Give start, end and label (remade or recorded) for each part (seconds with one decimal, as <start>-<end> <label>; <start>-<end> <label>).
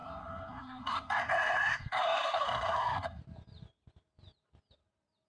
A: 0.0-3.2 remade; 3.2-5.3 recorded